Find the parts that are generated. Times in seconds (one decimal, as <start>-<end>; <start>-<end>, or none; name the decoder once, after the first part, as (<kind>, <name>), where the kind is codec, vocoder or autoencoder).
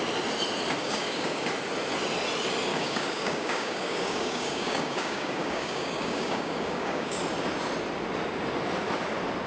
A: 0.8-1.5 (codec, DAC); 2.7-7.2